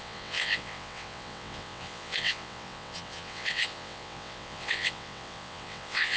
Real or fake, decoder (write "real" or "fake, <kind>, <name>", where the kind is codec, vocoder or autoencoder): fake, vocoder, WaveNeXt